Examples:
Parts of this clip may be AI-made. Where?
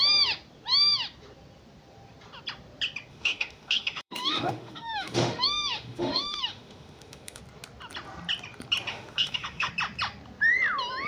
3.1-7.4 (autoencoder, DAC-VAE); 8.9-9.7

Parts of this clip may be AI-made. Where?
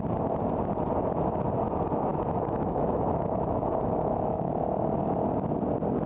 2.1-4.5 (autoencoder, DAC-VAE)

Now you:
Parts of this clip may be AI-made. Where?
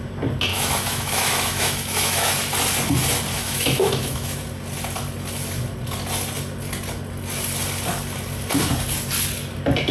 0.5-2.3 (autoencoder, DAC-VAE); 3.3-4.4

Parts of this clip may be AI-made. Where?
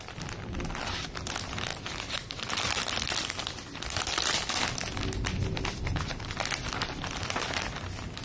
none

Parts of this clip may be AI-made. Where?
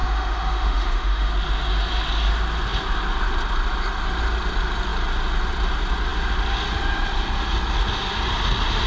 0.0-1.3 (autoencoder, DAC-VAE)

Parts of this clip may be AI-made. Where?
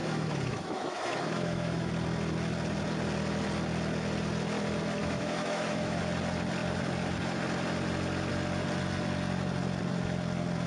0.0-1.9 (autoencoder, DAC-VAE); 5.0-6.0